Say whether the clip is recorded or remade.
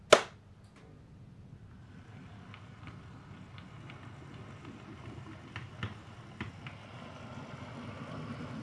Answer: recorded